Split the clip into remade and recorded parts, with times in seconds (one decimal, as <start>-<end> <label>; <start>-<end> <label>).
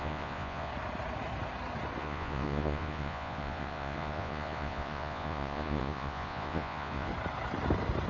0.0-0.7 remade; 0.7-2.0 recorded; 2.0-7.1 remade; 7.1-8.1 recorded